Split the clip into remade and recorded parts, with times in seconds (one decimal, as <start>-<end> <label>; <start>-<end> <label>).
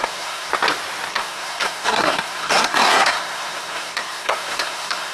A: 0.0-0.5 remade; 0.5-1.1 recorded; 1.1-5.1 remade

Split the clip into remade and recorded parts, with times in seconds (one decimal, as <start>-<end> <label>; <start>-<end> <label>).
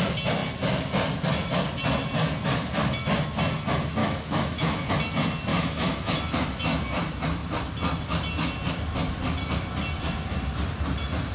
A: 0.0-4.0 recorded; 4.0-4.9 remade; 4.9-5.5 recorded; 5.5-6.1 remade; 6.1-11.3 recorded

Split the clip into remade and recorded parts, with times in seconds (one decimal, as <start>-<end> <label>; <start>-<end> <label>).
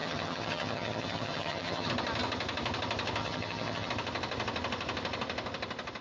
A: 0.0-1.9 remade; 1.9-3.2 recorded; 3.2-3.9 remade; 3.9-6.0 recorded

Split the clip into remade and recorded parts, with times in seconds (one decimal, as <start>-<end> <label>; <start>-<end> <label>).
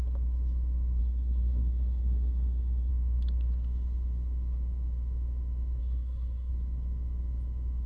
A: 0.0-1.0 recorded; 1.0-2.9 remade; 2.9-5.8 recorded; 5.8-6.5 remade; 6.5-7.9 recorded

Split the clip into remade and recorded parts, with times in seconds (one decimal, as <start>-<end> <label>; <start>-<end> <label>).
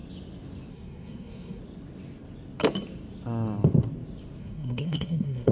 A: 0.0-0.7 recorded; 0.7-1.6 remade; 1.6-4.4 recorded; 4.4-5.5 remade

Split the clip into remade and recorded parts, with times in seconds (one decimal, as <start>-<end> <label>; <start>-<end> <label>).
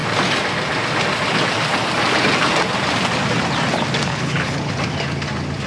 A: 0.0-4.1 recorded; 4.1-4.7 remade; 4.7-5.7 recorded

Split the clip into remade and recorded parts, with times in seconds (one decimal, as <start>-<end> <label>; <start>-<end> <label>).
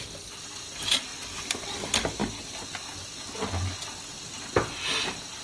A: 0.0-5.4 recorded